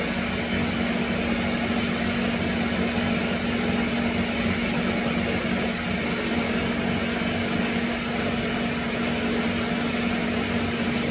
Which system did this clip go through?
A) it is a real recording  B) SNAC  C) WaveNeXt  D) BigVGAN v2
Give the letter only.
A